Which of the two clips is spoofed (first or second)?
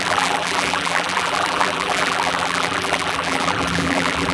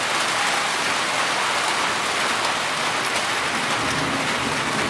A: first